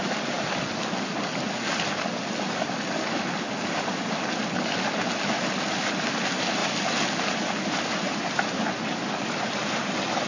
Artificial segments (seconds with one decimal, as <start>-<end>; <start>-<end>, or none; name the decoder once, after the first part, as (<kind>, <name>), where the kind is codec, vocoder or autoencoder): none